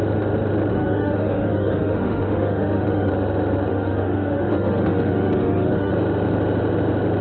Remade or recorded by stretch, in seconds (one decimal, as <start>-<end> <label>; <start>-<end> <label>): 0.0-0.7 recorded; 0.7-3.1 remade; 3.1-3.7 recorded; 3.7-5.9 remade; 5.9-7.2 recorded